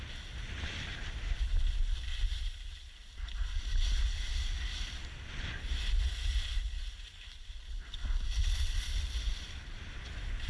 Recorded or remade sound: recorded